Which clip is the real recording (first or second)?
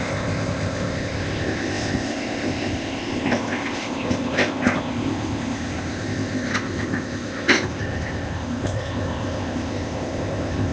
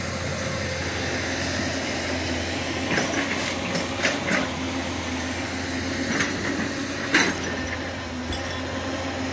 second